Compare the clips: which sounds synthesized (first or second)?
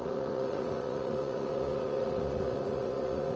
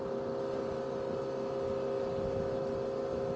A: first